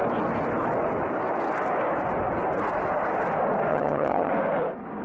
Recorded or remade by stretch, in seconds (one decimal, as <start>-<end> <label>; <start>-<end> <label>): 0.0-3.7 recorded; 3.7-4.3 remade; 4.3-5.0 recorded